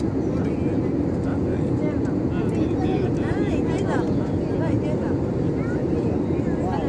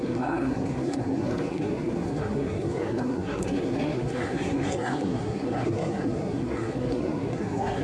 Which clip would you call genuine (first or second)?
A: first